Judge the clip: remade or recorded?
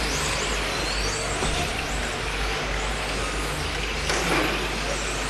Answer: recorded